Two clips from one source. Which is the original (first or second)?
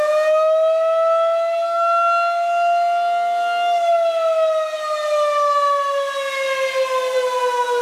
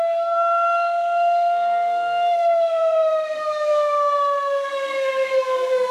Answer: first